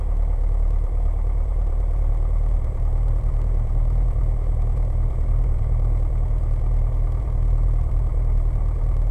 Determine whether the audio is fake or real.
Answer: fake